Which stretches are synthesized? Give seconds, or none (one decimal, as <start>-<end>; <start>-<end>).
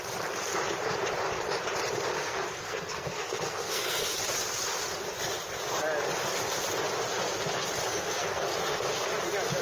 2.1-4.0; 7.9-8.5